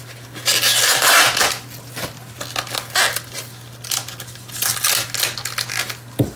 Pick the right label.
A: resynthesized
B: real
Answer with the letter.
B